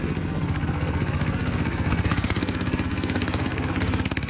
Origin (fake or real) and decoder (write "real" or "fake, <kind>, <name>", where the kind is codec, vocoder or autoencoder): fake, codec, SNAC